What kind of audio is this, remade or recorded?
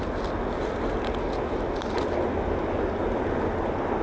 recorded